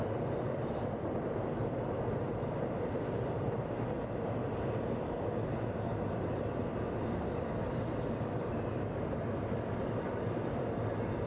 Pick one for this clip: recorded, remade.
recorded